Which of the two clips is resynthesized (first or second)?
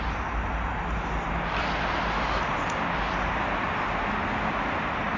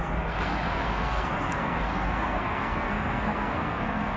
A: second